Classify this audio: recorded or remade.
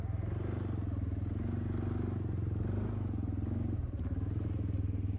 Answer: recorded